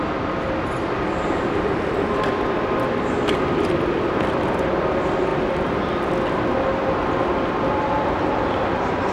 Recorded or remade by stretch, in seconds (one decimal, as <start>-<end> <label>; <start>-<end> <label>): 0.0-9.1 recorded